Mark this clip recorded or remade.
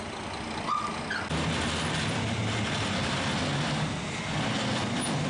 recorded